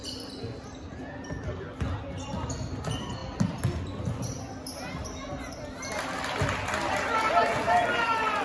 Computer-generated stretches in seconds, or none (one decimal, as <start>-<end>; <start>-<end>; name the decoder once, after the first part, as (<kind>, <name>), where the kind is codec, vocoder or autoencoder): none